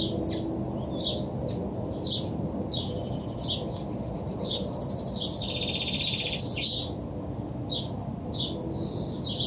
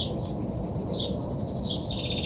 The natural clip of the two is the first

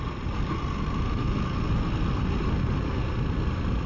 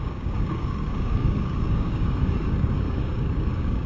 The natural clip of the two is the first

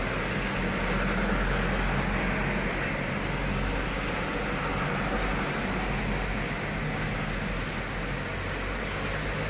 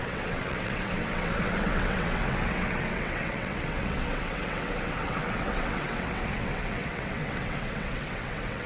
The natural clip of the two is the first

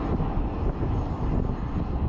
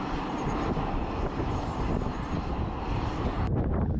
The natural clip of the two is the first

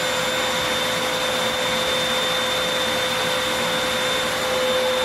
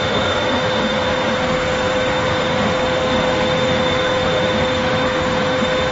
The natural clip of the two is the first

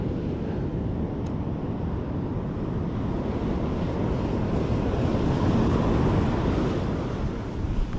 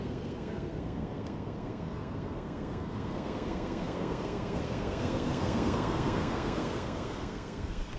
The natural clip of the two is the first